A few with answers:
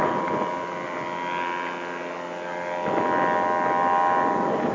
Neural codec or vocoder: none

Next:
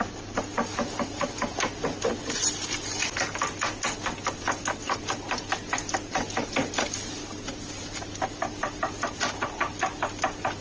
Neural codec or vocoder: none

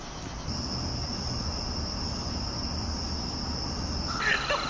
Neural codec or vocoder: none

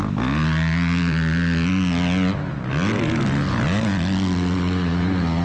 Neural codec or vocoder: none